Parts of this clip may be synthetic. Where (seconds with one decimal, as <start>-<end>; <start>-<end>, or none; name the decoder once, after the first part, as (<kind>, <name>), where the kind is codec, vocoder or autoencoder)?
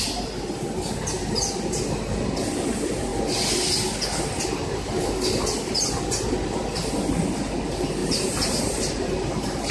8.0-9.7 (vocoder, BigVGAN v2)